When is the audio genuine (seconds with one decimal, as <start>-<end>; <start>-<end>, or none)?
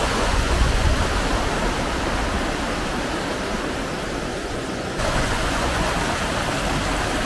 1.0-4.3; 5.9-7.3